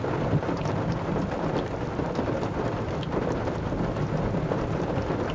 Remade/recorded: recorded